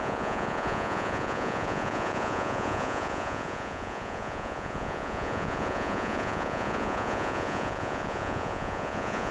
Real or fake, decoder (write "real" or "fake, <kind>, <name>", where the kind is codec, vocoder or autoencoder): fake, vocoder, Vocos